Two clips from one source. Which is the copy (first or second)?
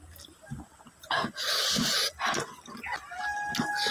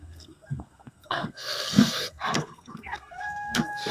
second